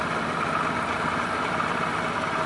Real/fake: real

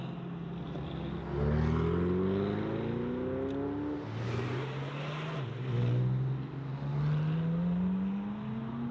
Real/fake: real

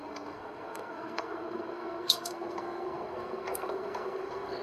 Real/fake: fake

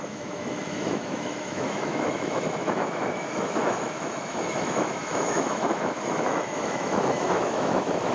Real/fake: fake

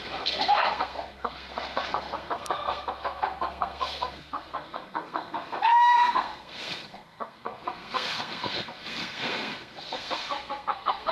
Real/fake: fake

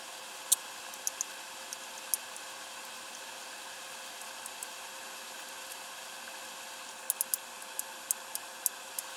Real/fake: real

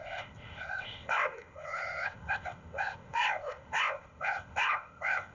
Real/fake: fake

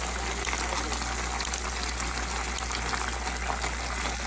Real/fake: real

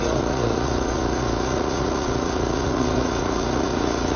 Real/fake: fake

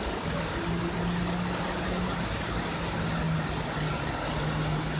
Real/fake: real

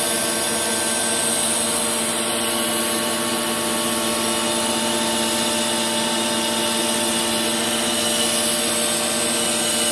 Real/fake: real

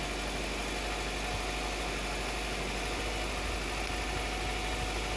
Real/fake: real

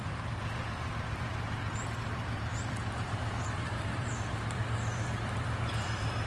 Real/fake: fake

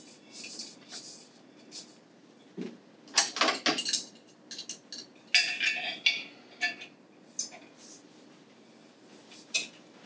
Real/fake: real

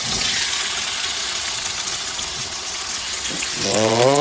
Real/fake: fake